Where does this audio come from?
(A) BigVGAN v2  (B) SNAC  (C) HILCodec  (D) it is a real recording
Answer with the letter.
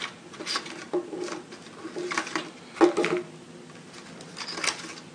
D